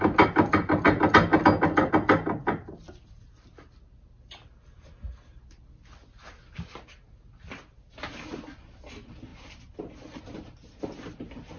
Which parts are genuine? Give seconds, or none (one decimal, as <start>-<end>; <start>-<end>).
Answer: 0.0-11.6